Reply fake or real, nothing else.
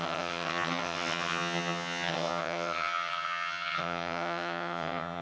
fake